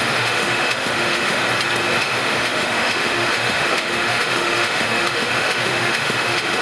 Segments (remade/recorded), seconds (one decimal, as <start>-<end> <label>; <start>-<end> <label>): 0.0-1.4 remade; 1.4-2.0 recorded; 2.0-6.6 remade